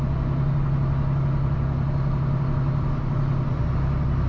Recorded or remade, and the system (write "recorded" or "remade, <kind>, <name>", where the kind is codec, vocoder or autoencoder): recorded